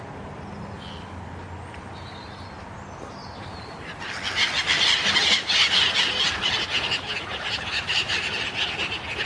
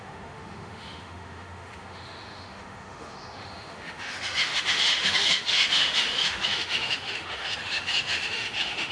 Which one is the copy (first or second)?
second